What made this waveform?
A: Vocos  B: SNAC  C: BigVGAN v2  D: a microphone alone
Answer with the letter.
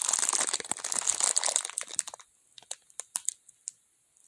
D